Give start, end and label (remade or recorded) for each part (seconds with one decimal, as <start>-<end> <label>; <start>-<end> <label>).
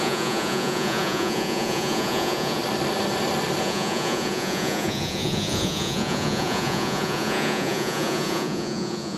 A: 0.0-2.6 remade; 2.6-3.6 recorded; 3.6-9.2 remade